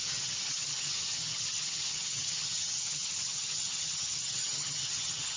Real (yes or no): no